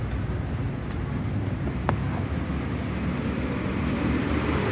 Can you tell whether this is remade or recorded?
recorded